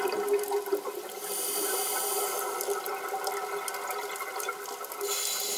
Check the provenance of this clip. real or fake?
real